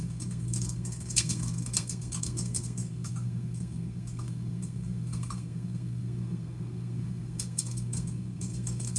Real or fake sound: fake